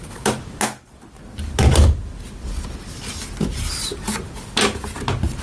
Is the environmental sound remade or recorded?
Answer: recorded